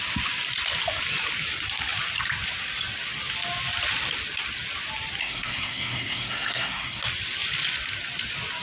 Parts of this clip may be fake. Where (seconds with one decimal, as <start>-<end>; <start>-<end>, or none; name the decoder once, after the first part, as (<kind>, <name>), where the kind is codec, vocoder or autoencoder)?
5.2-7.0 (codec, SNAC)